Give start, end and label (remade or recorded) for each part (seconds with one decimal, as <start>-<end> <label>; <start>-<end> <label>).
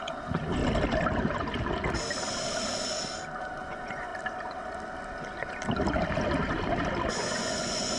0.0-0.6 remade; 0.6-3.4 recorded; 3.4-4.1 remade; 4.1-7.1 recorded; 7.1-8.0 remade